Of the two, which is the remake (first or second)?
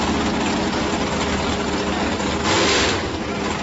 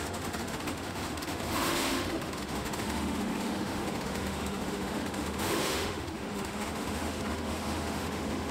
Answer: second